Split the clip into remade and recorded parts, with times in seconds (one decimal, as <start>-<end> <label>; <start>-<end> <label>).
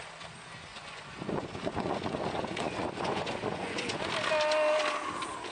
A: 0.0-0.7 recorded; 0.7-4.0 remade; 4.0-5.5 recorded